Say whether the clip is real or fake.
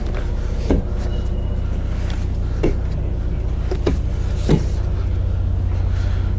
real